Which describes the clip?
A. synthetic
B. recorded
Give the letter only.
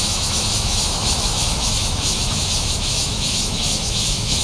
A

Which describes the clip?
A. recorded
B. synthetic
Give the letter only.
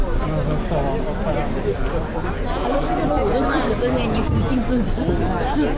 A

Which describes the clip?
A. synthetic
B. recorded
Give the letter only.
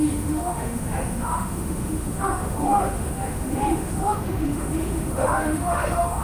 A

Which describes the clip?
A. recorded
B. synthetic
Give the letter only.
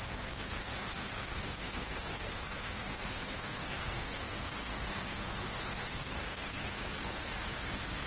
B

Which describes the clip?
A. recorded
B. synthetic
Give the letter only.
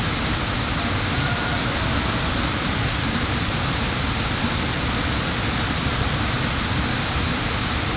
A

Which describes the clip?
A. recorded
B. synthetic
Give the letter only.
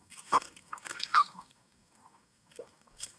B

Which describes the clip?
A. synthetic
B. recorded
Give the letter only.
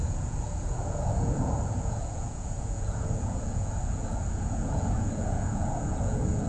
A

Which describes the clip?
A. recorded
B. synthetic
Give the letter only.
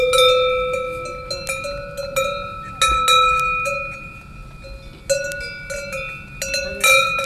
A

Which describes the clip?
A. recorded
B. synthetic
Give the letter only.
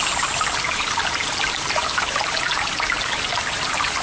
A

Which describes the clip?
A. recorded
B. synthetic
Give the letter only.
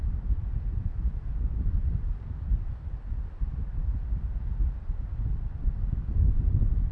A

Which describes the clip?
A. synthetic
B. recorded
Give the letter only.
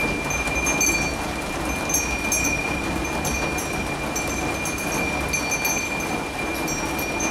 B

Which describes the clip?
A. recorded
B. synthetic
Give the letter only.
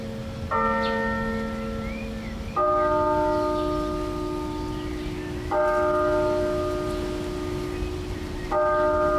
A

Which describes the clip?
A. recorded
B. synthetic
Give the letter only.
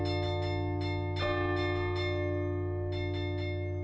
A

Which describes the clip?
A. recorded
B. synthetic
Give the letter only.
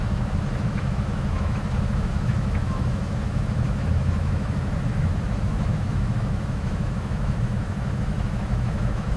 B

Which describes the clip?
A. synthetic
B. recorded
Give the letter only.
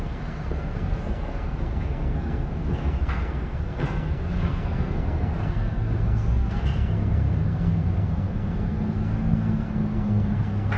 A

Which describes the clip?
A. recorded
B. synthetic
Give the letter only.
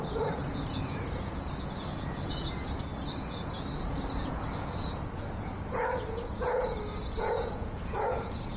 B